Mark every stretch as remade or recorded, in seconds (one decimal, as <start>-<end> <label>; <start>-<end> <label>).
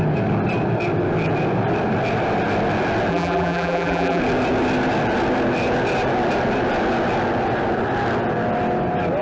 0.0-3.1 recorded; 3.1-4.2 remade; 4.2-9.2 recorded